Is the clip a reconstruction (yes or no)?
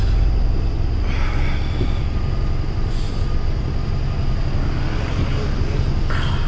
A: no